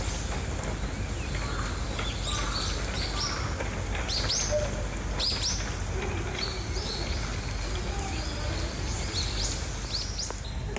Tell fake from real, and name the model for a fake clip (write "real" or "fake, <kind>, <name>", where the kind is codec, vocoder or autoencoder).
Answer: real